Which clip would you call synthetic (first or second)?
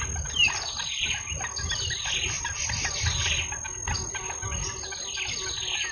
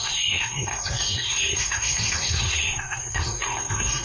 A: second